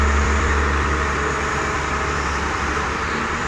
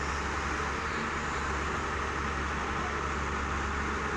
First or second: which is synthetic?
first